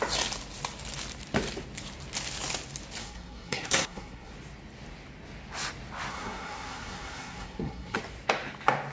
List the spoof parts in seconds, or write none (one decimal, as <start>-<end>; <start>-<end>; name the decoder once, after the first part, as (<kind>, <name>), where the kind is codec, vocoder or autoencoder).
3.0-4.3 (codec, SNAC); 6.1-8.0